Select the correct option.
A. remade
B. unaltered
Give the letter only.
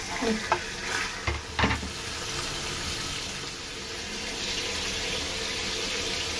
B